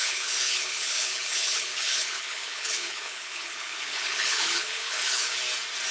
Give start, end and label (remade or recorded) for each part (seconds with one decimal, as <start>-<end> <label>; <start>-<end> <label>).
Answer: 0.0-5.4 remade; 5.4-5.9 recorded